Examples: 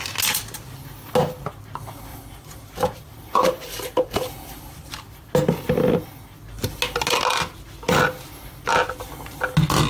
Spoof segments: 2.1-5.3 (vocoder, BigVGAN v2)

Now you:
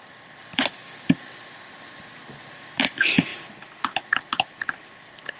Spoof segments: 0.0-0.8 (vocoder, BigVGAN v2); 2.8-5.4

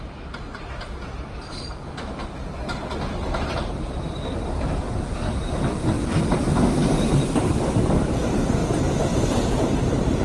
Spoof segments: 6.8-7.5 (vocoder, BigVGAN v2); 8.6-10.2

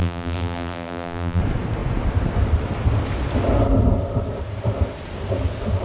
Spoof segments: 0.0-1.4 (vocoder, BigVGAN v2)

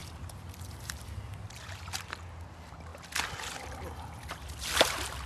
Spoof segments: 0.0-2.1 (vocoder, BigVGAN v2)

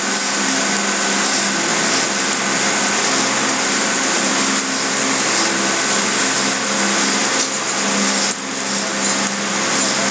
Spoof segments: none